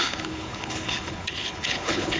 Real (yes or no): no